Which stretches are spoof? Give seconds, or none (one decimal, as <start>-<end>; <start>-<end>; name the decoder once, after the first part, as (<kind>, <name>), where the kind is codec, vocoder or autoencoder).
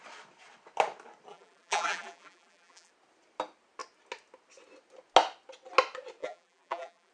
1.3-2.9 (vocoder, BigVGAN v2); 6.2-7.1